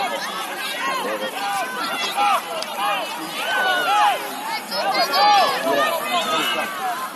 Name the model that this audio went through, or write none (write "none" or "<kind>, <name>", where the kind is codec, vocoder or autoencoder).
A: none